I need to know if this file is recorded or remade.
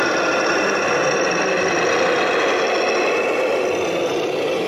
recorded